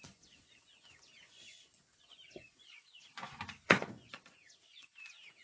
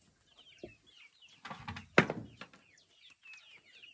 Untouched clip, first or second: second